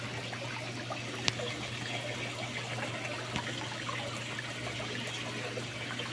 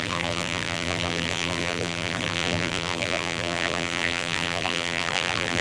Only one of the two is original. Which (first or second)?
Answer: first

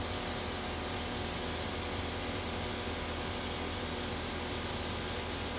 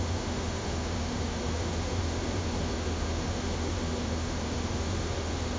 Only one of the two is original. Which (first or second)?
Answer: first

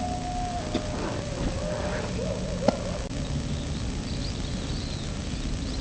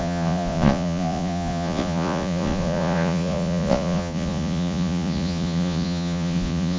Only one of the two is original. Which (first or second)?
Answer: first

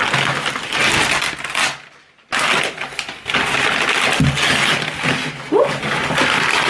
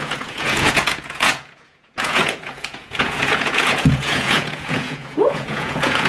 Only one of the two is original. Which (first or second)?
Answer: first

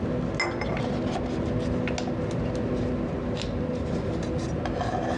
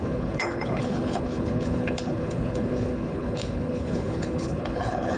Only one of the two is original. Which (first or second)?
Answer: first